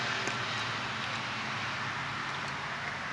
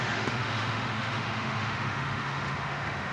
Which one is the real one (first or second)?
first